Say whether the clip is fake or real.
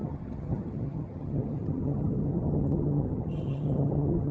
fake